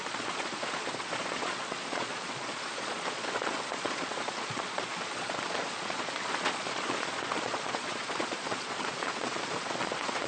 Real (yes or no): no